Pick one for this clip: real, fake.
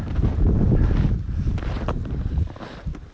real